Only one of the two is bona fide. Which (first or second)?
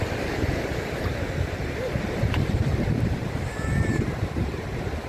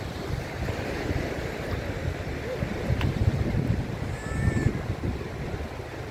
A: second